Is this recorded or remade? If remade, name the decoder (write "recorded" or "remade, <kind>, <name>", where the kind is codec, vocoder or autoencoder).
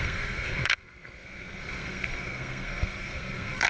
remade, codec, SNAC